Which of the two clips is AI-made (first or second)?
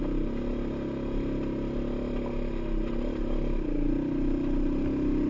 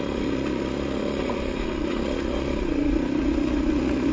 second